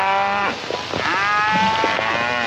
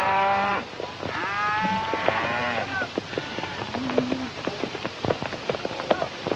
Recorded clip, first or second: first